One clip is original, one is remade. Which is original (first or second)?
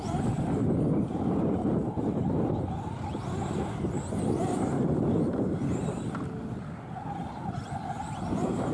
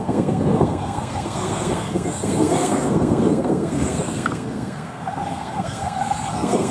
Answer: first